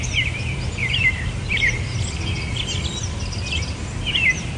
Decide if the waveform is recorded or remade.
remade